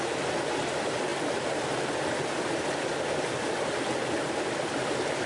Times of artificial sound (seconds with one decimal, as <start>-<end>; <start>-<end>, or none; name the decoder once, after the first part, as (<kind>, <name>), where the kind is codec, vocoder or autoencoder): none